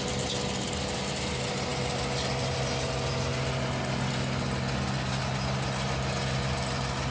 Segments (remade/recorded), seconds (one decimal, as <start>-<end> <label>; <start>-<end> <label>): 0.0-7.1 recorded